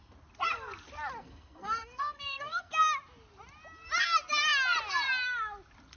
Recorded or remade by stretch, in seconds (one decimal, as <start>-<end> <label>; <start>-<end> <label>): 0.0-1.2 recorded; 1.2-2.7 remade; 2.7-6.0 recorded